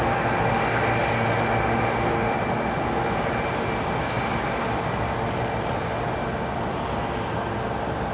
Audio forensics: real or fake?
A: real